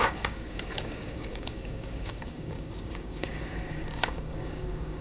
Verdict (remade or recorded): remade